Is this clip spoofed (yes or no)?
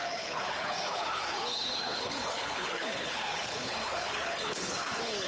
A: yes